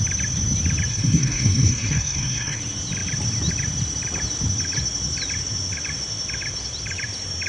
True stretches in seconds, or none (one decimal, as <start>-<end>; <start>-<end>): 0.0-0.9; 2.6-7.5